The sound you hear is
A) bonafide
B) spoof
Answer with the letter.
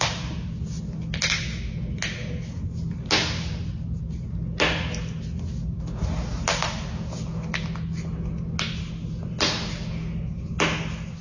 A